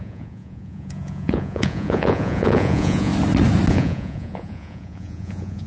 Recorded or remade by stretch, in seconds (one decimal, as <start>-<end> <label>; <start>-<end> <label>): 0.0-3.1 remade; 3.1-3.7 recorded; 3.7-5.7 remade